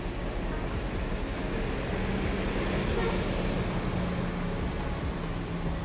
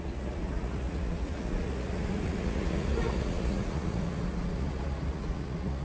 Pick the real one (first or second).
first